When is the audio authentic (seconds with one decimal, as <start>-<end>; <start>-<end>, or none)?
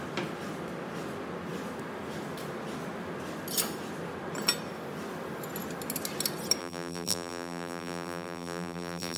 0.0-6.6